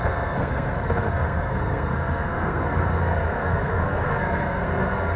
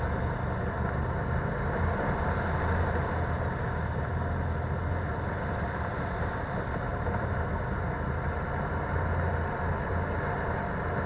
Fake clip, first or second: first